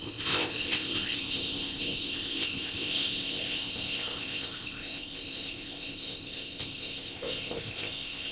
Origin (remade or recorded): remade